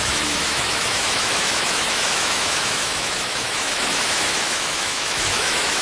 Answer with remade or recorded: remade